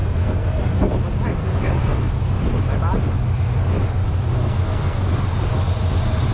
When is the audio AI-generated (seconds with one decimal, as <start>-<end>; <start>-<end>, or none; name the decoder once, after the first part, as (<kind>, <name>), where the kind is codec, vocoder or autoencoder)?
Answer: 0.0-0.9 (codec, SNAC); 1.4-2.1; 4.4-5.1